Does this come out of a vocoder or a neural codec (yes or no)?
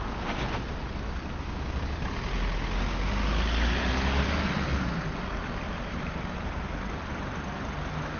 no